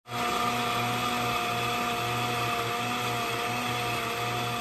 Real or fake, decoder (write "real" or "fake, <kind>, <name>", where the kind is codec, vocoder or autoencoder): real